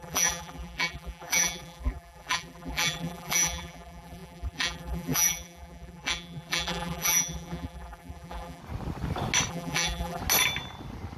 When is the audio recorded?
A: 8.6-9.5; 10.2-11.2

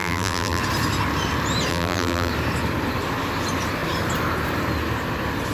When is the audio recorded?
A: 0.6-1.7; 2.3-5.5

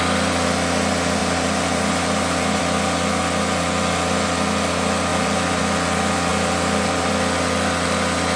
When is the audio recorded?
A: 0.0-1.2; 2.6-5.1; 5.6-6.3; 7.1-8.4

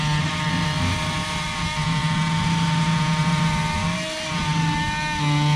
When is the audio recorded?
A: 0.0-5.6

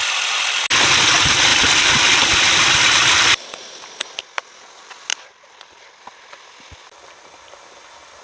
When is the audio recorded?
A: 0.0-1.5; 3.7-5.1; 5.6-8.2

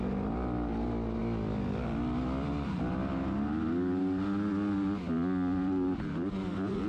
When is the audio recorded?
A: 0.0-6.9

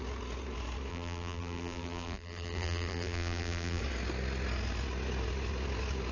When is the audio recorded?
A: 0.0-0.9; 3.8-6.1

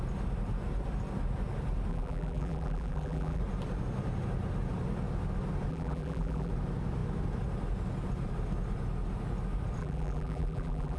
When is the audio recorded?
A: 0.0-1.9; 3.4-5.7; 6.5-9.8